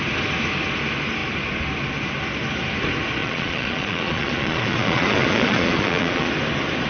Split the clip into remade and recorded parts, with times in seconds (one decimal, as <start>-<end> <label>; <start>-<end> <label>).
0.0-3.2 recorded; 3.2-6.3 remade; 6.3-6.9 recorded